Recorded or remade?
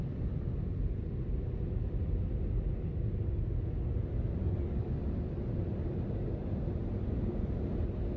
recorded